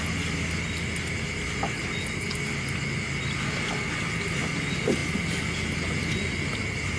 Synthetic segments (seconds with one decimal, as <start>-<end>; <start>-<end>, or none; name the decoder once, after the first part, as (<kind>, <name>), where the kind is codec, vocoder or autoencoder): none